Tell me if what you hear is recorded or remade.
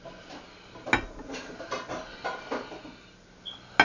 recorded